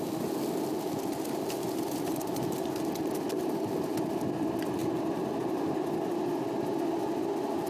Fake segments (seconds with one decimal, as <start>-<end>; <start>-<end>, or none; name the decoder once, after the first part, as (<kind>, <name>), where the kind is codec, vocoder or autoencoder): none